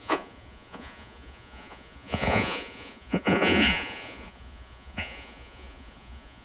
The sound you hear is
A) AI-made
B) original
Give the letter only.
A